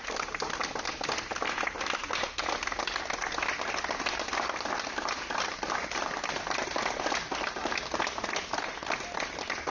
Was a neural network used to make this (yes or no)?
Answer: no